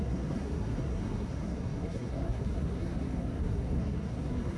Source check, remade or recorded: remade